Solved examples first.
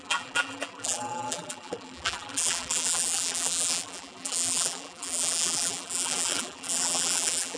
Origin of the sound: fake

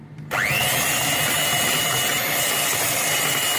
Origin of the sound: real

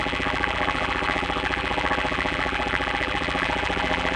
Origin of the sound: fake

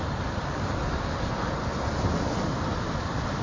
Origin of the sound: real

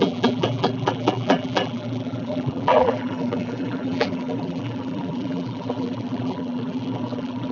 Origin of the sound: fake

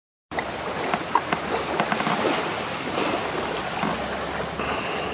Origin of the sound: real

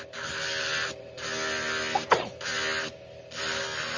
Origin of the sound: real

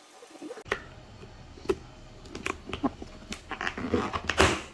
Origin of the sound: real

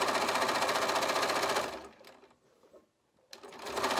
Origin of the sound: real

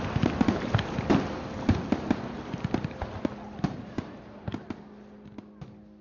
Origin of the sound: real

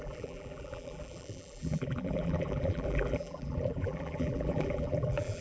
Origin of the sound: fake